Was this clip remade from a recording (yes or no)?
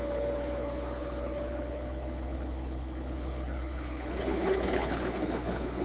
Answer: yes